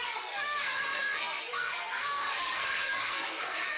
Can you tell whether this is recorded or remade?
remade